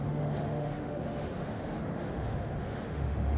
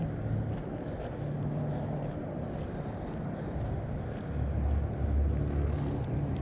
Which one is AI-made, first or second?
first